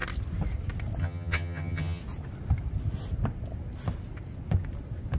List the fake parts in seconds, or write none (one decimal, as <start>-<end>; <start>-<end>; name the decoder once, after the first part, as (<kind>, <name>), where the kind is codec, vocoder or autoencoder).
1.0-2.0 (vocoder, HiFi-GAN)